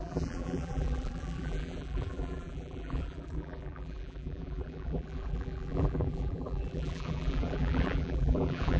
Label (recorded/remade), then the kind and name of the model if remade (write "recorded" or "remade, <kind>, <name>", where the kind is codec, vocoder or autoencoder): remade, vocoder, BigVGAN v2